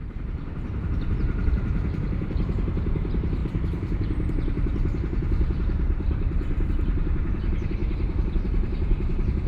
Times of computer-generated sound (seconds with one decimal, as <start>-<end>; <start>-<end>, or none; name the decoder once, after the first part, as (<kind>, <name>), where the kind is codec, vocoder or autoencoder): 0.0-9.5 (vocoder, BigVGAN v2)